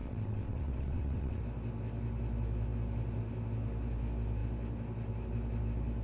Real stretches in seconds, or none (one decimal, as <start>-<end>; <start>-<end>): 1.4-6.0